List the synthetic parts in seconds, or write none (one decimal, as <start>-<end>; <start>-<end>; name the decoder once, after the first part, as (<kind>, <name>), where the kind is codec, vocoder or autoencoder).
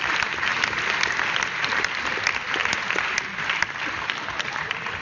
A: 0.0-0.5 (vocoder, BigVGAN v2); 1.4-2.6; 3.8-5.0